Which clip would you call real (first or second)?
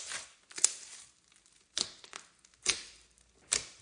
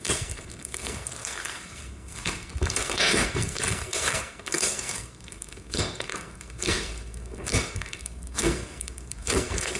first